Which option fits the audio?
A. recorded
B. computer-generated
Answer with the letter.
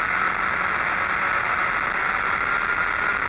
A